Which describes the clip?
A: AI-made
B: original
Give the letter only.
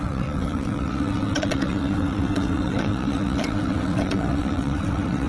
A